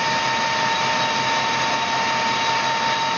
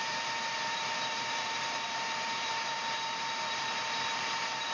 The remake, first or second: second